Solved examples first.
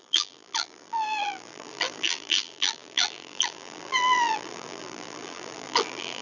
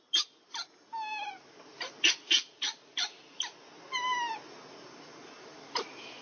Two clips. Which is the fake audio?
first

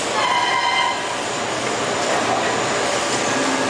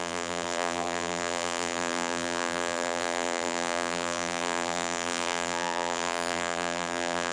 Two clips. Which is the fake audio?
second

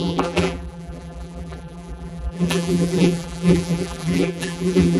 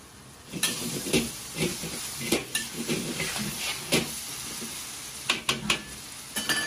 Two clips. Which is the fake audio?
first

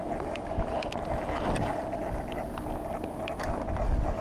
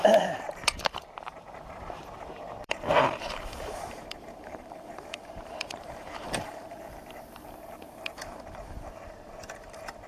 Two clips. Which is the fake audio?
second